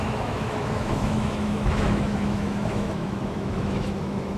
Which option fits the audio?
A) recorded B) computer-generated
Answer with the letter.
B